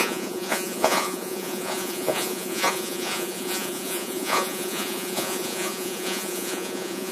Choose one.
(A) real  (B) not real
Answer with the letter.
B